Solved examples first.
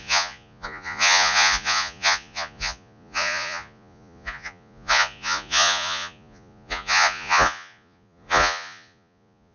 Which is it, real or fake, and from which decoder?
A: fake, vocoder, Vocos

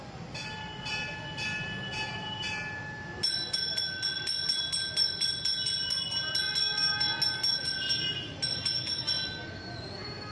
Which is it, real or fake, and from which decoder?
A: real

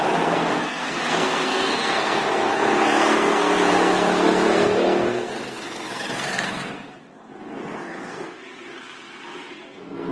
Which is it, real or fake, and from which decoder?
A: fake, codec, SNAC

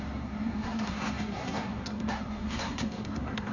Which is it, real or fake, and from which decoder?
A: fake, codec, SNAC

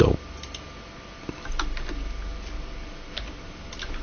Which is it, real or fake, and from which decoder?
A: real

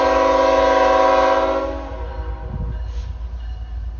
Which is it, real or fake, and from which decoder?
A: real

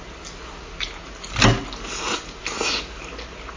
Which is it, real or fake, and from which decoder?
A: real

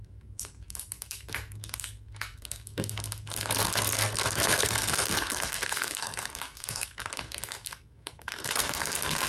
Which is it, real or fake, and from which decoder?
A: fake, codec, SNAC